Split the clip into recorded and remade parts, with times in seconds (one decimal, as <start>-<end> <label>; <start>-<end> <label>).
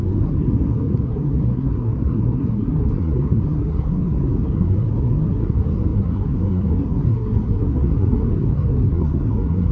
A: 0.0-9.7 remade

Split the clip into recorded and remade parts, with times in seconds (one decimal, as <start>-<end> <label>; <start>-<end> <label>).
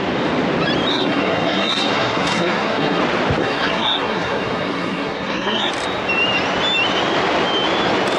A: 0.0-0.9 recorded; 0.9-3.0 remade; 3.0-3.4 recorded; 3.4-5.7 remade; 5.7-8.2 recorded